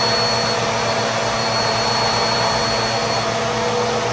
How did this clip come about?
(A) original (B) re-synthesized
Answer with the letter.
A